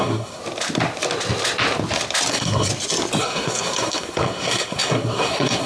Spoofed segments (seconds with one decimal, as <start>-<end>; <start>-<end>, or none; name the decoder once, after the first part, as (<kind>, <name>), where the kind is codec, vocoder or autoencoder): 0.0-0.4 (codec, SNAC); 2.3-2.7; 3.2-5.7